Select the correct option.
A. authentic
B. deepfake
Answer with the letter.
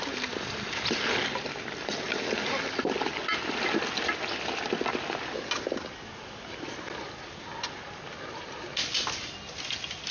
A